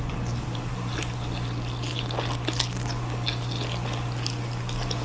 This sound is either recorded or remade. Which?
recorded